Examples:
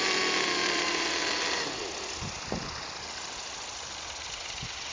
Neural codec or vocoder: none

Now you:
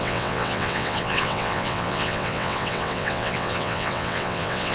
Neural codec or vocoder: vocoder, WaveNeXt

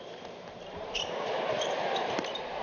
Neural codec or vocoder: vocoder, BigVGAN v2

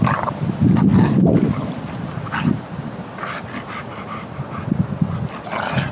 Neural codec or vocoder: none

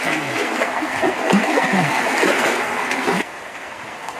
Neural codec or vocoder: codec, SNAC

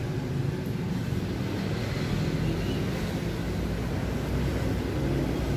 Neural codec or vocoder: none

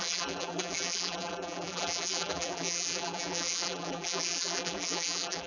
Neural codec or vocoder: vocoder, BigVGAN v2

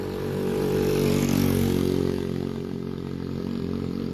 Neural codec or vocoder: none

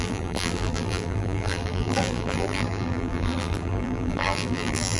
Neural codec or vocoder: vocoder, BigVGAN v2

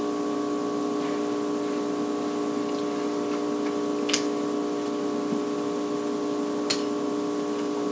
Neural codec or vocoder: none